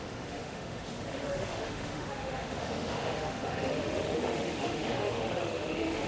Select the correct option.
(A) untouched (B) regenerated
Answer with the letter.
B